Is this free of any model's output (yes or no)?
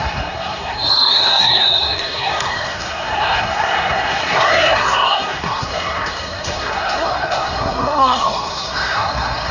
no